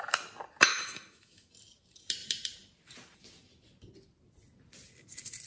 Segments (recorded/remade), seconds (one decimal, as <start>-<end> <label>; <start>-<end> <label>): 0.0-0.7 recorded; 0.7-1.5 remade; 1.5-5.5 recorded